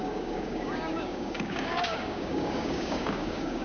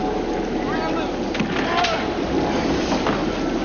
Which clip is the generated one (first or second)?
first